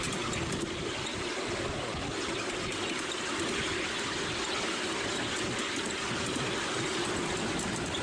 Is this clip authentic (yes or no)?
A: yes